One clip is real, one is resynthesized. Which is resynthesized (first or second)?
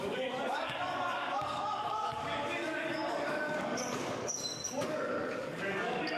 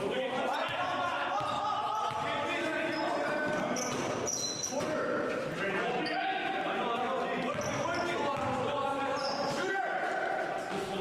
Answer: first